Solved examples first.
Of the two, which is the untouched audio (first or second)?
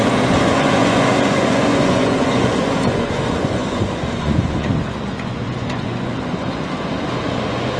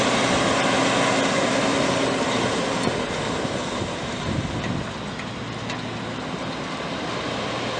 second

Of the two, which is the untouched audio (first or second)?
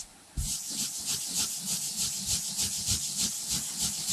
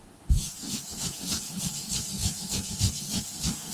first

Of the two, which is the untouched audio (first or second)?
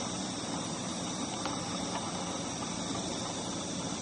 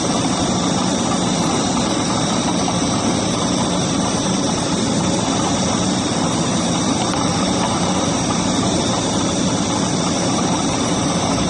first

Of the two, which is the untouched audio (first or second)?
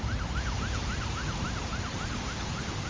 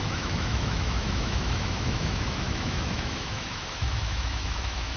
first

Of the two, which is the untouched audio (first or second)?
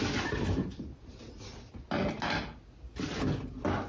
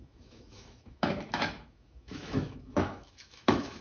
first